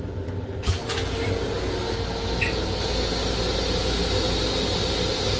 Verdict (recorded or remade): recorded